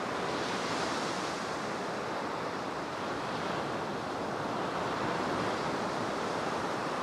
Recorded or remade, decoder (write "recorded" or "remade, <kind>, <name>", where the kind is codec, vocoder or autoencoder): remade, vocoder, BigVGAN v2